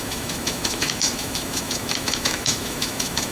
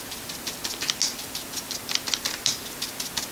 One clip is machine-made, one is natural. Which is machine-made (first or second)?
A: first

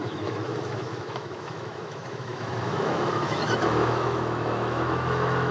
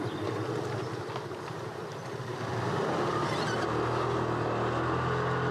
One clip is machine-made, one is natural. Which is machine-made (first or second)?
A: first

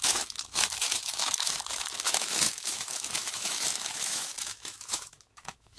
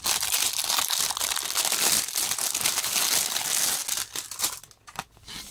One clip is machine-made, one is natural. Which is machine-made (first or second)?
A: first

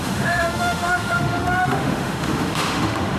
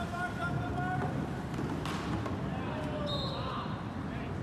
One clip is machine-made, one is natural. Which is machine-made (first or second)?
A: first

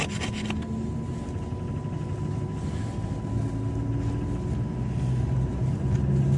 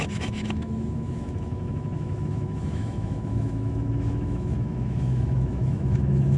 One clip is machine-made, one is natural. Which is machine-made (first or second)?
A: second